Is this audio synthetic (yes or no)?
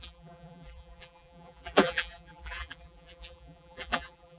yes